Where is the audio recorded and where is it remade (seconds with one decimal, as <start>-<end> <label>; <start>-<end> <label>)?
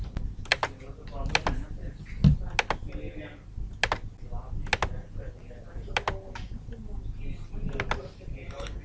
0.0-5.4 recorded; 5.4-5.9 remade; 5.9-8.8 recorded